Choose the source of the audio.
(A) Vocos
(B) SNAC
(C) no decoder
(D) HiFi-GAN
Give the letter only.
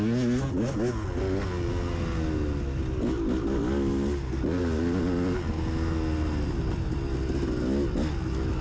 C